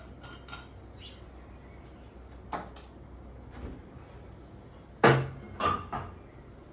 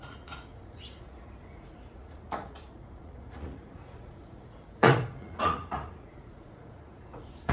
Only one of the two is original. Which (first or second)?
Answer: first